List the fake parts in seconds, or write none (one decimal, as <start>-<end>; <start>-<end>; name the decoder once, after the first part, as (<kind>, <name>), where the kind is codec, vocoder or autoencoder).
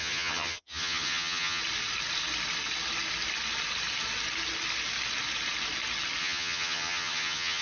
0.0-1.6 (vocoder, HiFi-GAN); 6.2-7.6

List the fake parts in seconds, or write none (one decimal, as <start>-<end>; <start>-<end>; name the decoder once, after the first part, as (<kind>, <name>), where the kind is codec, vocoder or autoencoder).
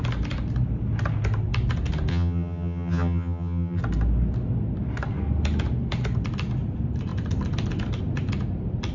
2.1-3.8 (vocoder, HiFi-GAN)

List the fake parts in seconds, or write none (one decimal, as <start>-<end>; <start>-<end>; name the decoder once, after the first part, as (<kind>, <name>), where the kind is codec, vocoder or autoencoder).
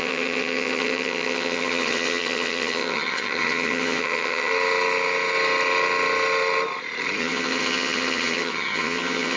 0.0-4.5 (vocoder, HiFi-GAN); 7.2-9.4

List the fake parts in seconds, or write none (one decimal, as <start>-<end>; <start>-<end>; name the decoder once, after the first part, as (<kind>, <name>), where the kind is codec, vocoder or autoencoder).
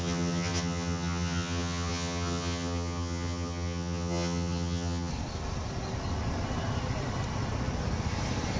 0.0-5.1 (vocoder, HiFi-GAN)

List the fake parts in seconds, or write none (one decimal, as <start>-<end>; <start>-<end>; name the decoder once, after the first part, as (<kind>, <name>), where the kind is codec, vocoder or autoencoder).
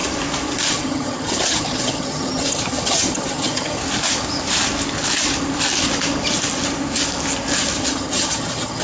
0.7-3.8 (vocoder, HiFi-GAN); 7.8-8.8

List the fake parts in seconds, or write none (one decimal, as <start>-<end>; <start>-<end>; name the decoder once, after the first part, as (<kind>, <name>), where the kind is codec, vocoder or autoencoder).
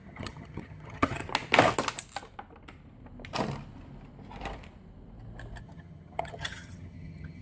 0.0-1.2 (vocoder, HiFi-GAN); 5.6-7.4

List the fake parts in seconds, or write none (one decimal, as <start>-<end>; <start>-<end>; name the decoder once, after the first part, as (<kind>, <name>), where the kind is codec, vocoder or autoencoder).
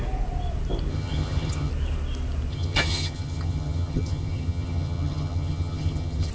0.9-1.7 (vocoder, HiFi-GAN); 2.5-6.3